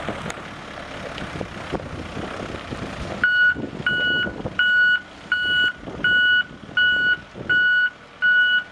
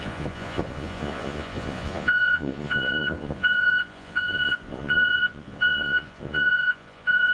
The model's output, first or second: second